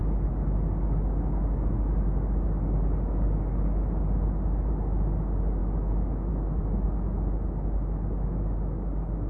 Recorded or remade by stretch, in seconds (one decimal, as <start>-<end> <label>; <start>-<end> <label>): 0.0-5.6 recorded; 5.6-6.3 remade; 6.3-9.3 recorded